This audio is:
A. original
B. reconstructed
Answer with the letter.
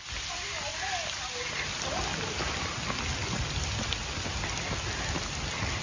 A